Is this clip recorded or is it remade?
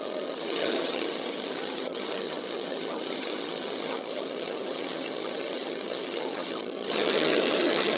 remade